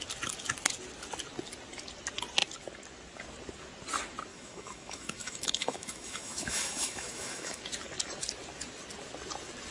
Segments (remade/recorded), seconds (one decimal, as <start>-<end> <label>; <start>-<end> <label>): 0.0-4.3 recorded; 4.3-7.6 remade; 7.6-9.7 recorded